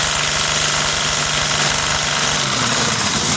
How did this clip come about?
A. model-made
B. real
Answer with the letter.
B